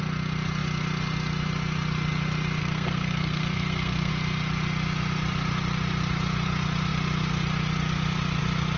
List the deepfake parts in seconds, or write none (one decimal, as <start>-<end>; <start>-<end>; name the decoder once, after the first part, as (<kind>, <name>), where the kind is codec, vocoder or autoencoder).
2.6-4.1 (codec, SNAC)